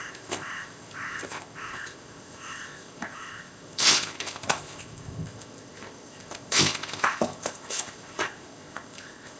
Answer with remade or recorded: remade